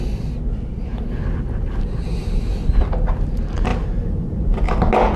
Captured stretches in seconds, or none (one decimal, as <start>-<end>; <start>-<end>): 0.0-3.7; 4.6-5.2